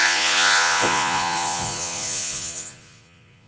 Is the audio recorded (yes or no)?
no